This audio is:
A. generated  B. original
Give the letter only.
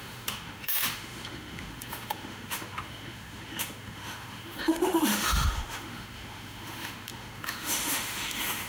A